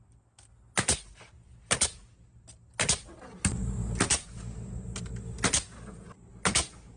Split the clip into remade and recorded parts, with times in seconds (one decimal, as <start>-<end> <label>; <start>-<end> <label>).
0.0-7.0 recorded